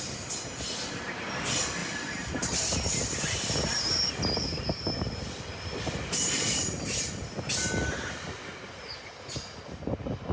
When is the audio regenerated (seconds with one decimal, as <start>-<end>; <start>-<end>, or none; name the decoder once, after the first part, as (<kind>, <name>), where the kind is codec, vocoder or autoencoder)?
1.8-4.1 (vocoder, BigVGAN v2)